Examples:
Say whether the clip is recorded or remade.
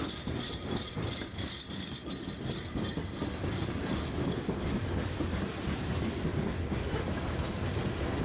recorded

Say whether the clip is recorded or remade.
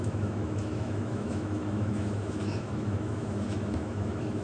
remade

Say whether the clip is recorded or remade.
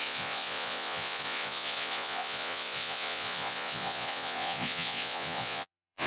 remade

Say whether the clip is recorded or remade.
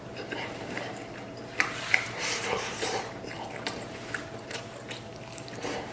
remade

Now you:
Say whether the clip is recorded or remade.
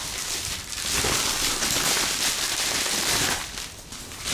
recorded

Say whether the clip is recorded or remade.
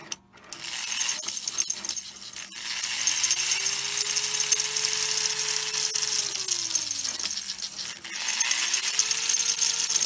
recorded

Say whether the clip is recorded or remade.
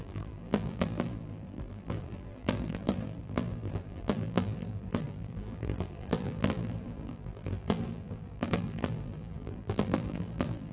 remade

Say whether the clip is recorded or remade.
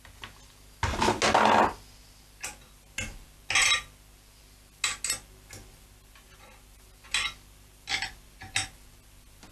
recorded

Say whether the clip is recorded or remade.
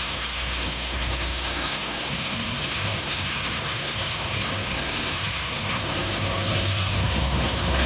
remade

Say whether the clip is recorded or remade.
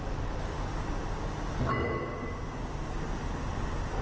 recorded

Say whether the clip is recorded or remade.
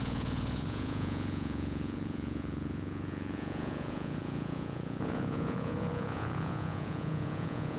remade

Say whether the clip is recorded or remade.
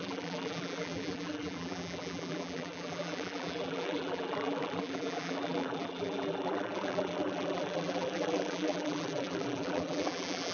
remade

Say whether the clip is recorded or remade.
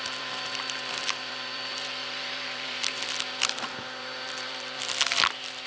remade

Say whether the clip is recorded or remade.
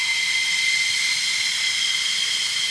recorded